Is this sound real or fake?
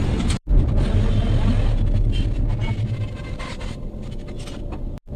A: real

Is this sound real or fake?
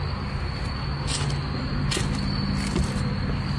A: real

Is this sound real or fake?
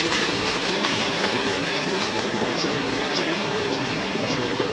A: fake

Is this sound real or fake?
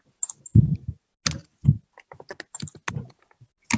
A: real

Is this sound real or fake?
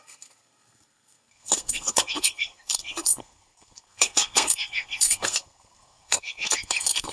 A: fake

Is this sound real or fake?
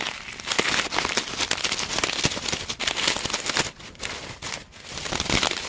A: real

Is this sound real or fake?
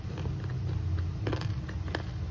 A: real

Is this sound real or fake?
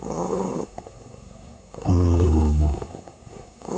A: fake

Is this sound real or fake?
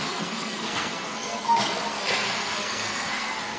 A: fake